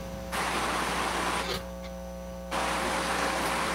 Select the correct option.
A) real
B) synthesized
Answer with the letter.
B